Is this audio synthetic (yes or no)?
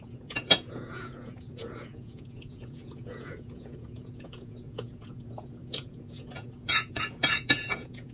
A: yes